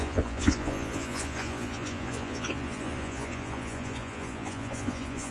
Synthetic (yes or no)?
yes